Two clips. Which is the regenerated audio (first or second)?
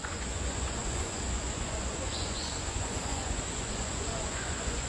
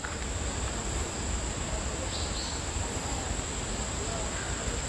first